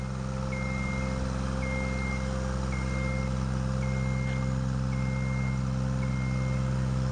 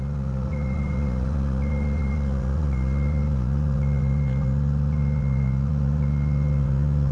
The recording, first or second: first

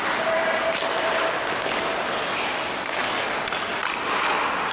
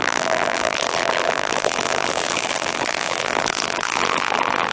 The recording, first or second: first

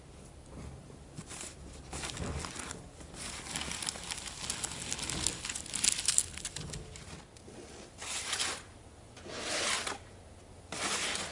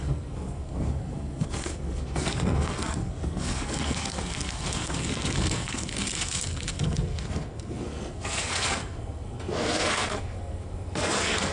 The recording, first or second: first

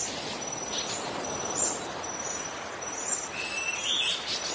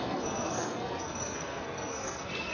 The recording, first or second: first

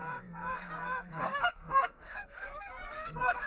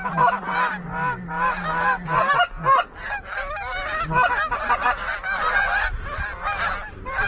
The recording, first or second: second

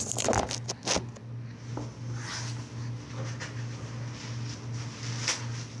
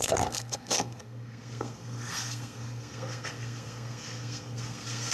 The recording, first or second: first